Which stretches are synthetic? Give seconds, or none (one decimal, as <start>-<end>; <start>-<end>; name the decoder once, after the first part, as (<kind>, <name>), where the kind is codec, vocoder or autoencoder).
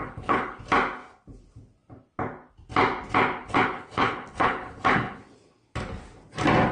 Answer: 0.0-0.6 (codec, HILCodec); 3.4-5.2